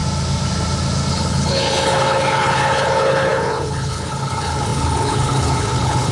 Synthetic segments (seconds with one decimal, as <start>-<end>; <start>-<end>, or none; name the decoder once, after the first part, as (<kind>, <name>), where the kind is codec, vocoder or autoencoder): 1.1-6.1 (codec, HILCodec)